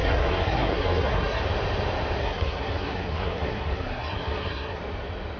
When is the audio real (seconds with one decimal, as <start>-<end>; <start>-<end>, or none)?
1.4-2.2; 4.8-5.4